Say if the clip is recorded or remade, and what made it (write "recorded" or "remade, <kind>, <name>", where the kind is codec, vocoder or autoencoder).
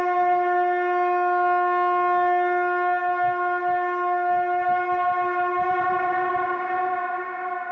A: recorded